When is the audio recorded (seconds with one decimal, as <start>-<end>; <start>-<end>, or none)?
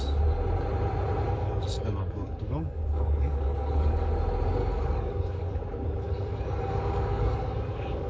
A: 0.0-1.4; 4.1-4.6